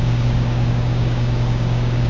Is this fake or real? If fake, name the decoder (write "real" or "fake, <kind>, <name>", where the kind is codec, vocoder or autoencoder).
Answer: fake, codec, DAC